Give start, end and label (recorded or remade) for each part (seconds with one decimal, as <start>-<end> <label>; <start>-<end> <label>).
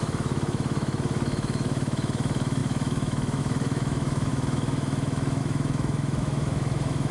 0.0-7.1 remade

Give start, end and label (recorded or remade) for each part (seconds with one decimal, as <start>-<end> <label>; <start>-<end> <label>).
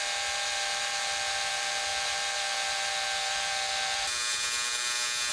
0.0-5.3 recorded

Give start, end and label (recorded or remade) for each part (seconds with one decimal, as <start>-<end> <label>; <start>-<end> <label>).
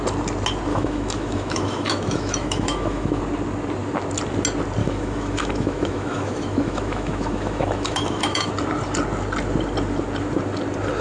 0.0-0.7 recorded; 0.7-3.2 remade; 3.2-4.8 recorded; 4.8-8.5 remade; 8.5-11.0 recorded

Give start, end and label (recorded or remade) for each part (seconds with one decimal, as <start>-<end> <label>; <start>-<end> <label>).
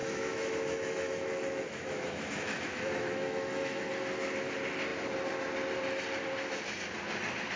0.0-3.8 remade; 3.8-7.6 recorded